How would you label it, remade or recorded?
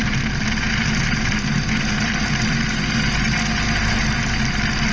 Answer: recorded